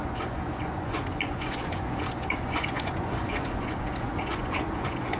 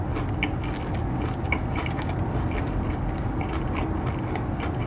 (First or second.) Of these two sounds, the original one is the second